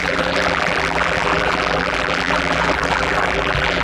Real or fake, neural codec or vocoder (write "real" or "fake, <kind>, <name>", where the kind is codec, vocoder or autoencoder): fake, vocoder, BigVGAN v2